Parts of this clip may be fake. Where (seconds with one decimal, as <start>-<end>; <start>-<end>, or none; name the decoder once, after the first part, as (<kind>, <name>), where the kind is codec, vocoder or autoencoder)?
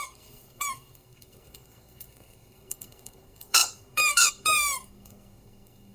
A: 0.0-5.9 (codec, SNAC)